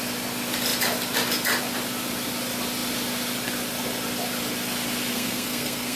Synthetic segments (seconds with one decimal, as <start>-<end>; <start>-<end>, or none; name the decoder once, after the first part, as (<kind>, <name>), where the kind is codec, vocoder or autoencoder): 5.1-6.0 (codec, SNAC)